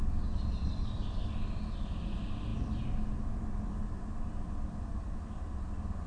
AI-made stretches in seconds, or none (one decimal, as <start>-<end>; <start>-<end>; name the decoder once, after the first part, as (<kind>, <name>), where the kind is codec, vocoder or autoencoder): none